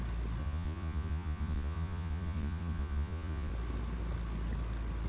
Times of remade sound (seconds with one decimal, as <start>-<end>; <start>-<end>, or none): 0.4-3.5